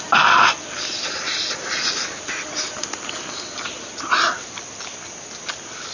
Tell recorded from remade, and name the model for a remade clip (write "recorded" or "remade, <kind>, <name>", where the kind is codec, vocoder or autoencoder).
recorded